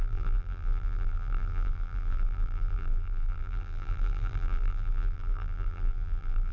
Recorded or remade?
remade